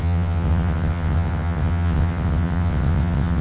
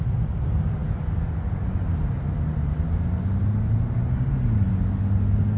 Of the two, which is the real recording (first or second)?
second